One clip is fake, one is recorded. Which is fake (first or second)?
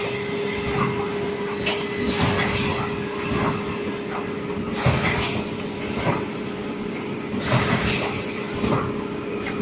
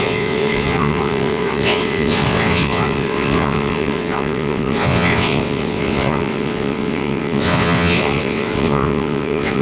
second